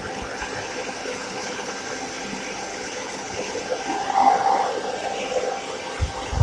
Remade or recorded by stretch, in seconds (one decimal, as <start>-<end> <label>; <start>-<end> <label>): 0.0-1.0 recorded; 1.0-1.7 remade; 1.7-2.7 recorded; 2.7-3.6 remade; 3.6-6.4 recorded